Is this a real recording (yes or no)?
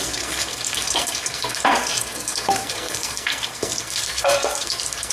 no